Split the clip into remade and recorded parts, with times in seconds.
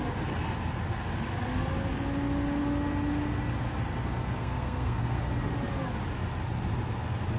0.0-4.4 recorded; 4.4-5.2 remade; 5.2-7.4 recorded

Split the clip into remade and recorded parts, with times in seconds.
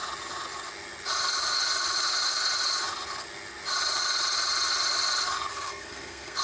0.0-5.5 recorded; 5.5-6.4 remade